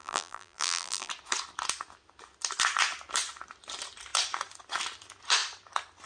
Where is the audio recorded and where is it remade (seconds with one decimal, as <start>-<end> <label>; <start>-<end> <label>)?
0.0-1.1 remade; 1.1-6.1 recorded